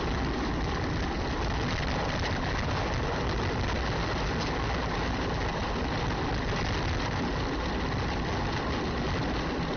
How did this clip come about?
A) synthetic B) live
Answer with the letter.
B